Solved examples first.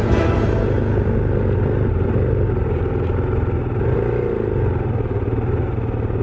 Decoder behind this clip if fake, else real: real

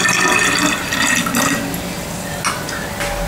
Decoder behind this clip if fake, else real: real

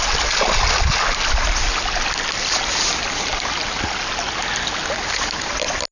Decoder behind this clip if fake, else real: real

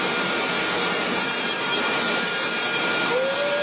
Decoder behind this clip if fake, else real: real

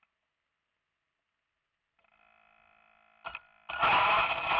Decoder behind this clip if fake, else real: real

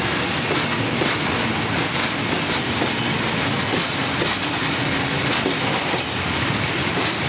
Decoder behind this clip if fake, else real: real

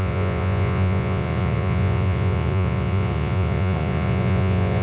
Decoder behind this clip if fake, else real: fake, vocoder, Vocos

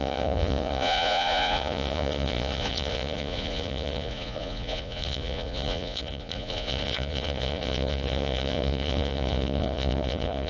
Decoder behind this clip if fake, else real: fake, vocoder, Vocos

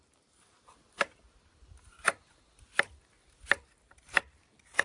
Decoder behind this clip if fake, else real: real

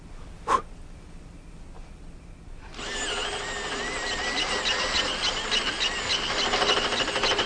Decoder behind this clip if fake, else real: real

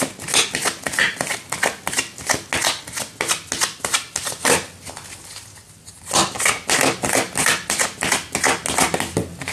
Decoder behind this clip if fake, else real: real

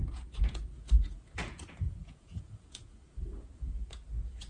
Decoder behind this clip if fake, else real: fake, vocoder, Vocos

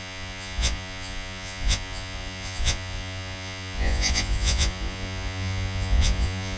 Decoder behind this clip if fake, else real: fake, vocoder, Vocos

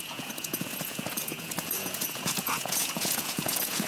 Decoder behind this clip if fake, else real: fake, vocoder, Vocos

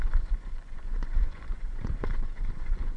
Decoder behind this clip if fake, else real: fake, vocoder, Vocos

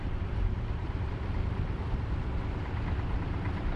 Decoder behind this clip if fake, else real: real